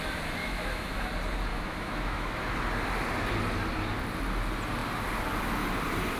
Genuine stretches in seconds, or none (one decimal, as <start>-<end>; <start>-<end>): 0.0-0.4; 1.1-1.5; 2.4-6.2